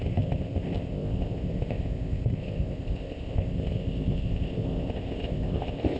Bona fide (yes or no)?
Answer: no